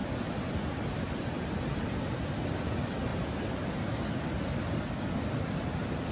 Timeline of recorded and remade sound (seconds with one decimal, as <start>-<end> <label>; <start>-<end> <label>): 0.0-6.1 recorded